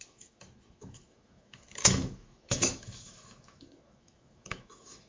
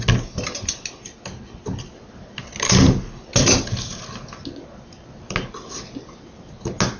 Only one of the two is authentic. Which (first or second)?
second